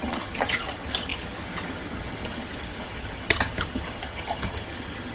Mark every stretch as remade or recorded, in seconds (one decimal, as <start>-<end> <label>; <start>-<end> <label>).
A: 0.0-5.1 remade